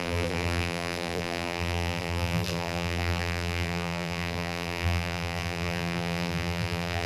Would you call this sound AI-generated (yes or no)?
yes